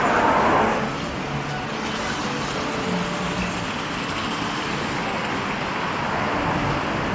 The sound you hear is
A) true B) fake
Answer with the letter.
A